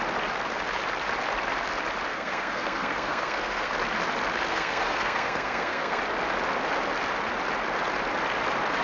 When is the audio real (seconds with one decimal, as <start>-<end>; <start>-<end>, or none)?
0.0-2.1; 3.7-4.5; 6.0-8.8